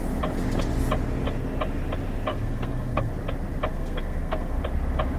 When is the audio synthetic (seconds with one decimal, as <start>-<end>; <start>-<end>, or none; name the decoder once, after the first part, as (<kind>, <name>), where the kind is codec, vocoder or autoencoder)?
2.3-3.1 (codec, SNAC); 3.7-4.6